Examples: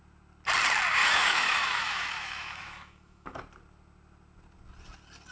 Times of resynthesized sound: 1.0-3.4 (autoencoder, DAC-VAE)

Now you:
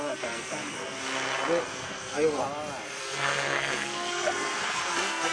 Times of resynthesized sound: 0.0-1.0 (codec, SNAC); 1.6-2.4; 3.0-5.3

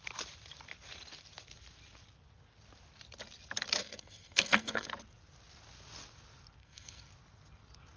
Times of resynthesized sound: 3.8-4.9 (codec, SNAC); 6.6-7.1

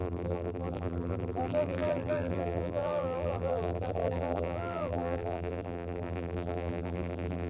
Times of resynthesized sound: 0.0-7.5 (vocoder, BigVGAN v2)